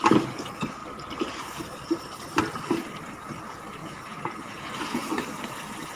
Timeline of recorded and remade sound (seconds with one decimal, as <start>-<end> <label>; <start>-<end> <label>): 0.0-3.8 recorded; 3.8-5.1 remade; 5.1-6.0 recorded